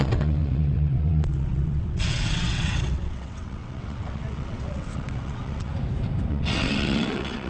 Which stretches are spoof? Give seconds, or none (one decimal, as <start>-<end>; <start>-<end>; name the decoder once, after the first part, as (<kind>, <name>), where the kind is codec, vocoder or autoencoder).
0.0-5.7 (vocoder, WaveNeXt); 6.3-7.5